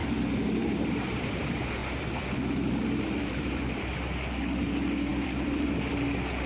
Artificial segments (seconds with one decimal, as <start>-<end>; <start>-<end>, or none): 0.0-1.4; 1.8-3.9; 5.1-5.9